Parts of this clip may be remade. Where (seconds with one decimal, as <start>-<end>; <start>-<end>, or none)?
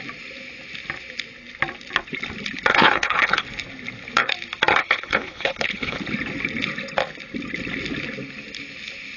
2.7-3.4; 4.8-6.0